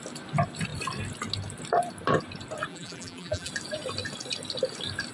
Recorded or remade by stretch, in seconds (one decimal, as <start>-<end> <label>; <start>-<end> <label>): 0.0-2.7 recorded; 2.7-3.5 remade; 3.5-5.1 recorded